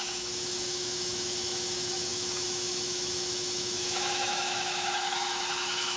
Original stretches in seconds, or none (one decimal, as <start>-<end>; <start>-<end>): none